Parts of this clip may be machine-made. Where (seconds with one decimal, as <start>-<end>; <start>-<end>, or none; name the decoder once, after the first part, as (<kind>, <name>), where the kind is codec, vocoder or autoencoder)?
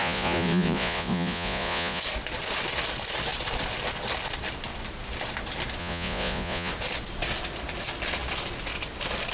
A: 0.0-2.0 (vocoder, Vocos); 5.8-6.7